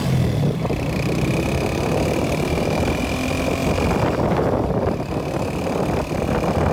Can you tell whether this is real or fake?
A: real